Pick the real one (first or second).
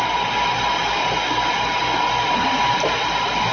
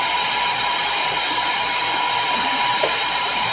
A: first